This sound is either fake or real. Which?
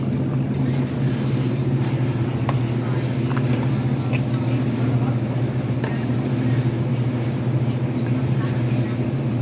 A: real